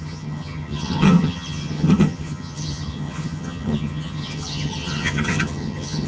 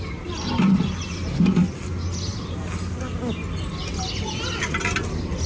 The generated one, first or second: first